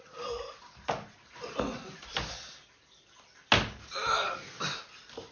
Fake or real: real